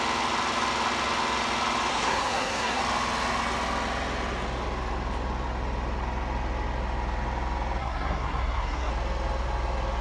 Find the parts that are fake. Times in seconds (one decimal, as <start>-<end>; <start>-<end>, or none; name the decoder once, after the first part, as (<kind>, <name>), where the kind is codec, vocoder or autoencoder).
1.9-2.8 (codec, SNAC); 7.8-8.9